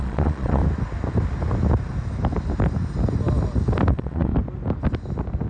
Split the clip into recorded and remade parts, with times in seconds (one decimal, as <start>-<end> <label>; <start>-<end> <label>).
0.0-0.6 remade; 0.6-3.9 recorded; 3.9-4.3 remade; 4.3-5.5 recorded